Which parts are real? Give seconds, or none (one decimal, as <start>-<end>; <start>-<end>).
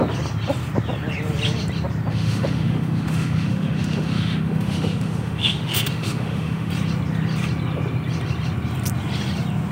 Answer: 0.0-2.1; 6.7-9.7